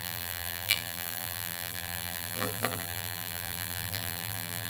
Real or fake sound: fake